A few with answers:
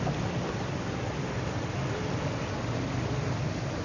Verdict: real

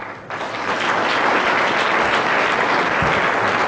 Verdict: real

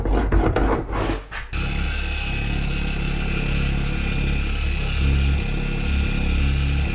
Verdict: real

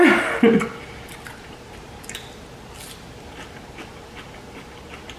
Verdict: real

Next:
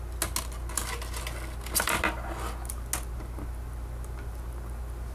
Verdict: real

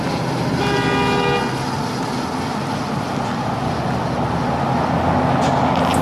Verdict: real